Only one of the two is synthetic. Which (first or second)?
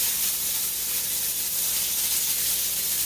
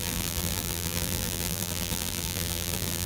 second